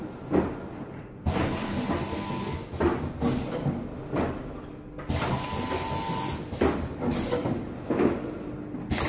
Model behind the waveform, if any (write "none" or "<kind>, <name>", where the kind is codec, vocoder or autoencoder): none